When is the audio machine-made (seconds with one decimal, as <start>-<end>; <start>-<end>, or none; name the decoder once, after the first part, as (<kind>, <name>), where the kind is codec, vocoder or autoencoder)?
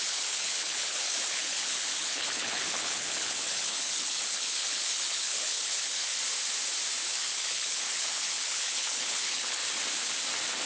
0.0-6.1 (codec, HILCodec); 7.0-9.6